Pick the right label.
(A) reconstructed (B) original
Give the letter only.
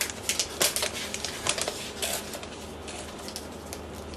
B